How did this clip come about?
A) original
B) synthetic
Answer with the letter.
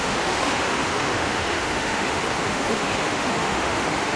B